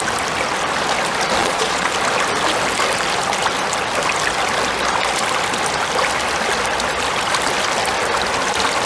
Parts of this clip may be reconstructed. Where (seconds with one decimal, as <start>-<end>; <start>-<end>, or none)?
1.4-1.9